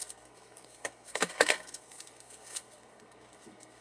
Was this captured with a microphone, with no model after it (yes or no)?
no